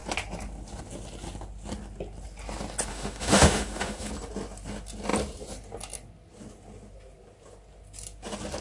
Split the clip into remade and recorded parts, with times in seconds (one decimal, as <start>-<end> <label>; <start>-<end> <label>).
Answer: 0.0-2.9 recorded; 2.9-4.1 remade; 4.1-8.6 recorded